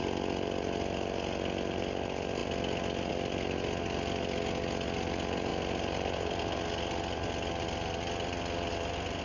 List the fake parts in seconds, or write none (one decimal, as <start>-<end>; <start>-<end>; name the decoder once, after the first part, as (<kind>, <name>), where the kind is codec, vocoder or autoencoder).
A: none